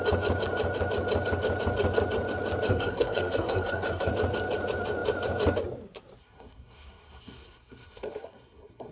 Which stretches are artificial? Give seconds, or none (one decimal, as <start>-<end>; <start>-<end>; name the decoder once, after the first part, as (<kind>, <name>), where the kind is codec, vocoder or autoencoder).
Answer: 2.7-4.1 (codec, SNAC); 6.2-8.9